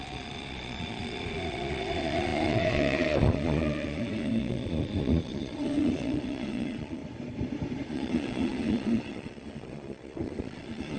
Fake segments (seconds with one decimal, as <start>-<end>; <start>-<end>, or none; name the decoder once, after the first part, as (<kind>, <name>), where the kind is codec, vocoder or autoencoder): 0.0-7.0 (vocoder, Vocos); 7.9-11.0

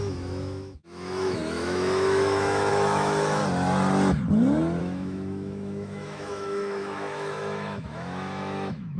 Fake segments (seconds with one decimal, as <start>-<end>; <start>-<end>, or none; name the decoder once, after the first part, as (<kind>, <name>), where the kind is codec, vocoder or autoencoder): 0.0-3.4 (autoencoder, DAC-VAE); 4.8-9.0

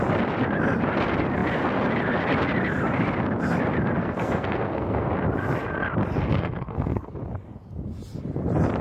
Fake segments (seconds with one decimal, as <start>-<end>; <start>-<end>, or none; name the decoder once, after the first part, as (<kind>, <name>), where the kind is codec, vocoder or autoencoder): 4.0-5.1 (codec, SNAC); 6.3-7.1

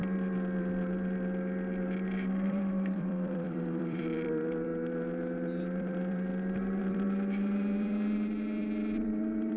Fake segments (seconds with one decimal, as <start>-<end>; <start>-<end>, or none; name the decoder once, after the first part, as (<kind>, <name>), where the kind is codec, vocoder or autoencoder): 2.5-4.7 (vocoder, BigVGAN v2); 5.6-6.3; 6.8-9.6

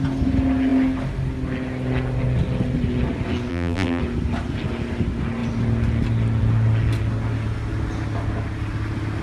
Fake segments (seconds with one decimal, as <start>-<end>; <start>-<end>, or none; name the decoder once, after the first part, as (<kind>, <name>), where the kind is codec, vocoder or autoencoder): 3.5-4.0 (vocoder, BigVGAN v2)

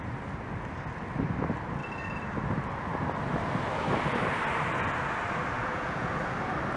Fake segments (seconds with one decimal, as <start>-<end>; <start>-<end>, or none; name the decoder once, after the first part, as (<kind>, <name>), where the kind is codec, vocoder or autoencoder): 5.6-6.2 (vocoder, Vocos)

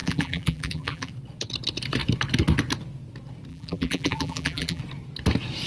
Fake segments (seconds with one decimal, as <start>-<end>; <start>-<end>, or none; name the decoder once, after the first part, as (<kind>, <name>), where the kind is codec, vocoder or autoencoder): 0.0-1.1 (vocoder, BigVGAN v2); 3.5-4.8

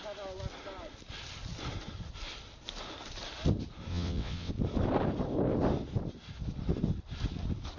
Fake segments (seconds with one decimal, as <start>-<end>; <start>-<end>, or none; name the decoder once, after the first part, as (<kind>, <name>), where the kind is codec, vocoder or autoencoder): 3.9-4.5 (vocoder, WaveNeXt)